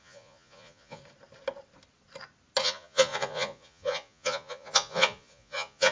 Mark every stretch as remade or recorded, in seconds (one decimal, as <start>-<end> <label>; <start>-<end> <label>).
0.0-1.0 remade; 1.0-2.6 recorded; 2.6-5.9 remade